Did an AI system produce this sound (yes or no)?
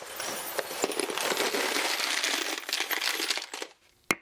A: no